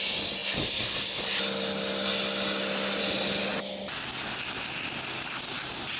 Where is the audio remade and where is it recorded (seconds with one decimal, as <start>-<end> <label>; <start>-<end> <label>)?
0.0-6.0 recorded